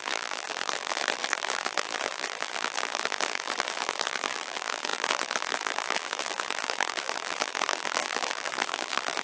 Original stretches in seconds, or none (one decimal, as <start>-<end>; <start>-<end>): none